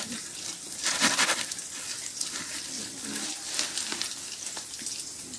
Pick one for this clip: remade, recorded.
recorded